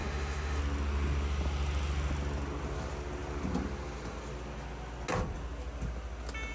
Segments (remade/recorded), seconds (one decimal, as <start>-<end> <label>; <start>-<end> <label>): 0.0-0.6 remade; 0.6-6.5 recorded